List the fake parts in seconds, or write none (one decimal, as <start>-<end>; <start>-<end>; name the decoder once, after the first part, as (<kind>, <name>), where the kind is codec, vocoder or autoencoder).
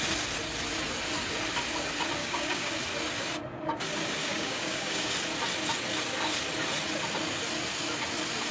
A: 2.2-2.7 (codec, DAC); 4.2-5.1